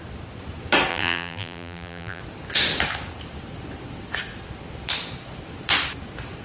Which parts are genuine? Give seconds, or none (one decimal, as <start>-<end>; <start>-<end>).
0.0-0.9; 2.2-6.4